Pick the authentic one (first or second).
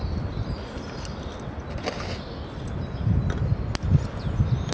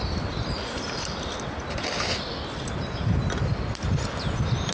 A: first